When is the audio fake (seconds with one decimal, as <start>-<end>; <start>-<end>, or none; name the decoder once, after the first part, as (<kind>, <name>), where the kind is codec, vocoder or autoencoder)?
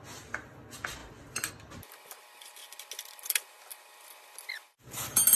none